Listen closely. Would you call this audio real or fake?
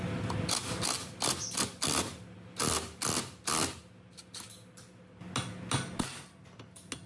real